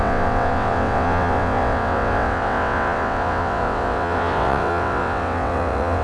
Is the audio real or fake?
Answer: fake